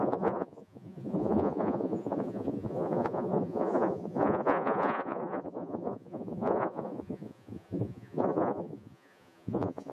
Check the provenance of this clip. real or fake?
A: fake